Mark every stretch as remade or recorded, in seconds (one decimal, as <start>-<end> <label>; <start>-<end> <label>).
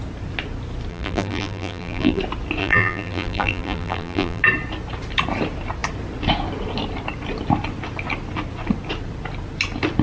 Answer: 0.0-0.9 recorded; 0.9-2.2 remade; 2.2-2.6 recorded; 2.6-4.4 remade; 4.4-10.0 recorded